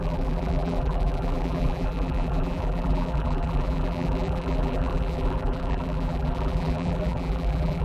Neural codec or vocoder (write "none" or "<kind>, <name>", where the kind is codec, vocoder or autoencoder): vocoder, BigVGAN v2